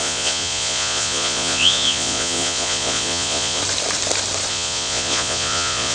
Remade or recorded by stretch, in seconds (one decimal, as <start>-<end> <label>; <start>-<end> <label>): 0.0-3.6 remade; 3.6-4.5 recorded; 4.5-5.9 remade